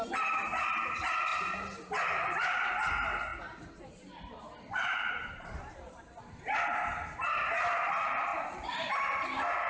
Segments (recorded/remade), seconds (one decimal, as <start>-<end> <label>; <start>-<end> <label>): 0.0-3.3 recorded; 3.3-6.4 remade; 6.4-9.7 recorded